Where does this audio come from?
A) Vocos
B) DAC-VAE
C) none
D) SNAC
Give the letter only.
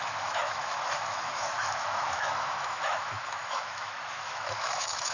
B